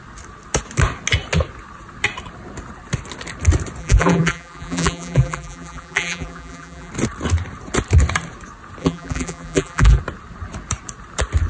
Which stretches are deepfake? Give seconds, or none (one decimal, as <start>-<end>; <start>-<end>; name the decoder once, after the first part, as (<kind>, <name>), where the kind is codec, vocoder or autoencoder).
3.8-6.9 (vocoder, BigVGAN v2); 8.8-10.0